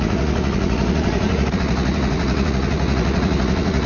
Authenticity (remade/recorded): remade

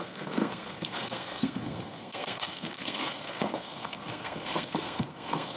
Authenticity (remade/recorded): remade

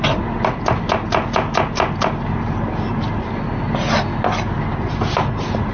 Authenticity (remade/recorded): recorded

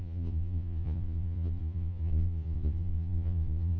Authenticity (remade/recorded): remade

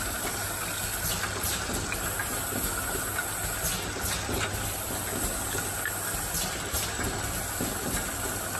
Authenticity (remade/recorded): recorded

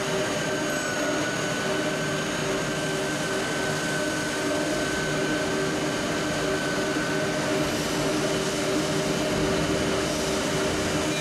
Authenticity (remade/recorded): recorded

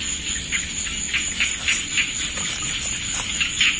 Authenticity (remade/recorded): recorded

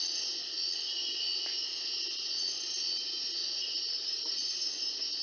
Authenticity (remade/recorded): recorded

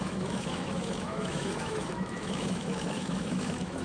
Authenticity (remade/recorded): remade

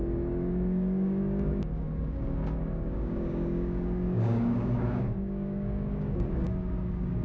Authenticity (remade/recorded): remade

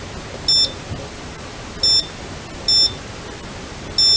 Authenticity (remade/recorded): recorded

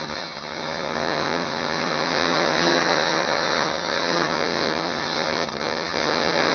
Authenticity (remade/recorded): remade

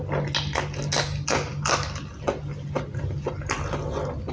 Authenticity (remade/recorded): recorded